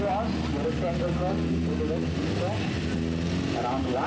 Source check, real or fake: real